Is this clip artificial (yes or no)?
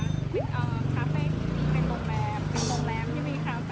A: no